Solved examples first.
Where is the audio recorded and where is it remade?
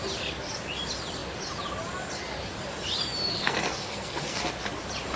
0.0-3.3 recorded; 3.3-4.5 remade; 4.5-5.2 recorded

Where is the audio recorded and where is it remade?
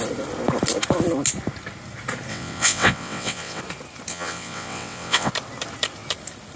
0.0-2.3 recorded; 2.3-3.6 remade; 3.6-4.1 recorded; 4.1-5.3 remade; 5.3-6.6 recorded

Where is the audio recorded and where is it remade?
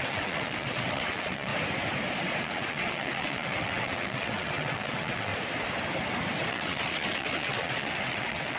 0.0-1.5 remade; 1.5-2.4 recorded; 2.4-5.3 remade; 5.3-6.5 recorded; 6.5-8.6 remade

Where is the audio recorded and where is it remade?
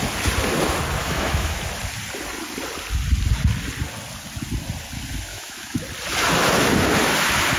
0.0-1.0 recorded; 1.0-1.6 remade; 1.6-5.3 recorded; 5.3-5.8 remade; 5.8-7.6 recorded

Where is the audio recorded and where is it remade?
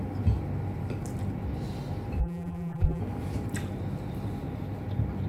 0.0-2.2 recorded; 2.2-3.0 remade; 3.0-5.3 recorded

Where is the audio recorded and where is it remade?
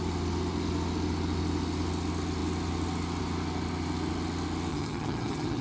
0.0-4.7 recorded; 4.7-5.6 remade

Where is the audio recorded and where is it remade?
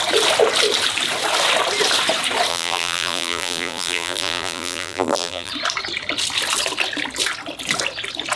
0.0-2.5 recorded; 2.5-5.5 remade; 5.5-8.4 recorded